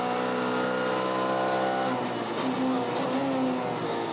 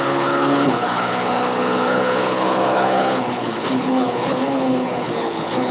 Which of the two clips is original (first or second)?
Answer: first